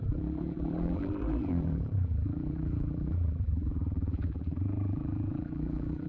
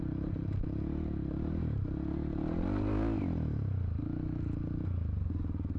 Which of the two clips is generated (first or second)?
first